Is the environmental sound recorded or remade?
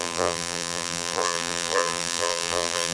remade